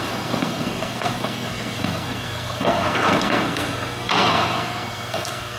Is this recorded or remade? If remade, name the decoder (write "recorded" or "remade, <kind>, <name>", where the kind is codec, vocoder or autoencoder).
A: remade, codec, SNAC